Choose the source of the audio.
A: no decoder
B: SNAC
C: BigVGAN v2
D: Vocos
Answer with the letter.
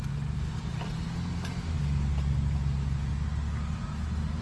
A